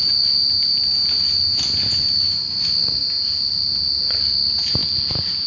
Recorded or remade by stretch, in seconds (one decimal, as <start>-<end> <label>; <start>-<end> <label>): 0.0-5.5 recorded